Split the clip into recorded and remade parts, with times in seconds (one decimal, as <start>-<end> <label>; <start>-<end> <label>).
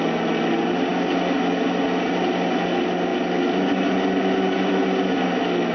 0.0-5.7 recorded